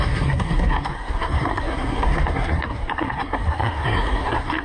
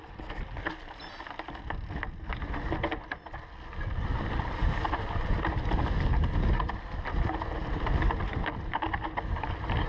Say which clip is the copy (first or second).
first